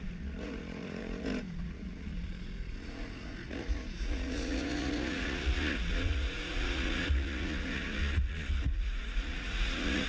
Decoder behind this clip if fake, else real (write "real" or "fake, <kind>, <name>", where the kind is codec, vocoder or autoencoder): fake, vocoder, Vocos